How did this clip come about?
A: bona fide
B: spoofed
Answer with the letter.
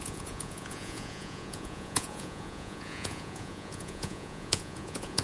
B